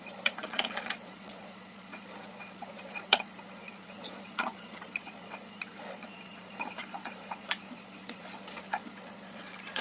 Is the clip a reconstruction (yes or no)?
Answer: yes